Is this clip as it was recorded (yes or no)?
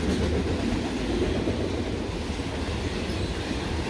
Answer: yes